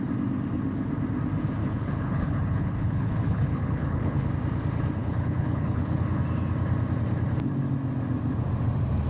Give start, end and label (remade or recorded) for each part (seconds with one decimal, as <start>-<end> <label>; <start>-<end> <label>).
0.0-1.6 recorded; 1.6-4.3 remade; 4.3-5.0 recorded; 5.0-6.2 remade; 6.2-9.1 recorded